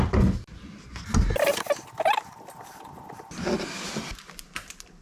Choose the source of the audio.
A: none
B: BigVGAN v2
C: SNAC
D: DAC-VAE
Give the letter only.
A